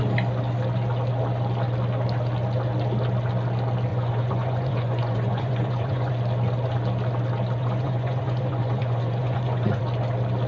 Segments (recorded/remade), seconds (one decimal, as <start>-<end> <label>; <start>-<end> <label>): 0.0-3.9 recorded; 3.9-6.1 remade; 6.1-7.6 recorded; 7.6-9.8 remade; 9.8-10.5 recorded